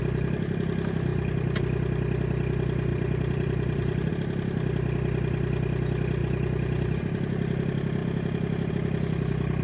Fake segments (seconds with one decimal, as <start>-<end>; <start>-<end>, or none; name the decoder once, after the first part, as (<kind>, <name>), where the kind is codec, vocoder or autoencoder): 1.1-1.6 (vocoder, BigVGAN v2); 2.9-4.1; 6.2-7.0; 8.0-8.7